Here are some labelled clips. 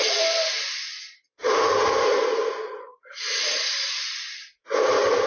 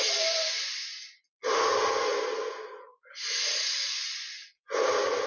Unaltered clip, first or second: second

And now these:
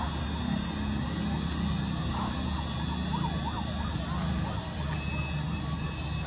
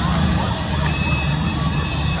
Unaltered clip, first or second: first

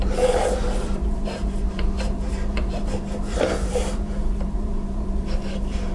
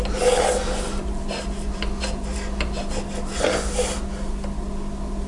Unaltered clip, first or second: second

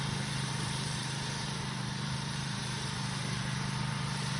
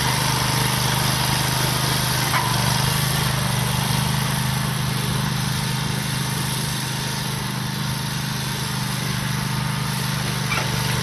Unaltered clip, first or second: second